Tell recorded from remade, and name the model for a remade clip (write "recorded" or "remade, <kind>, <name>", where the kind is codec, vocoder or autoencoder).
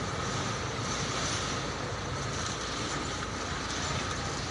recorded